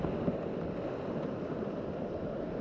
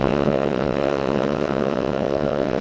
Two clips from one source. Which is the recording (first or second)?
first